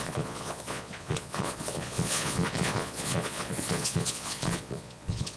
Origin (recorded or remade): remade